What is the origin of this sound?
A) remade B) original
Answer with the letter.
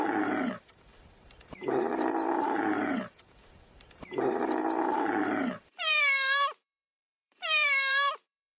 A